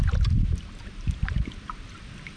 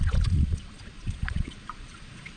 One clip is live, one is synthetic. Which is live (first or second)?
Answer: first